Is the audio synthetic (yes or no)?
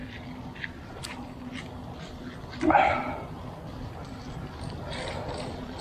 no